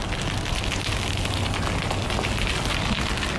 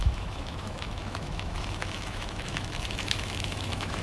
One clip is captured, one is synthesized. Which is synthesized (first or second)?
second